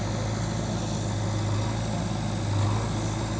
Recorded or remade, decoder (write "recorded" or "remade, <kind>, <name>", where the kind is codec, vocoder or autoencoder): recorded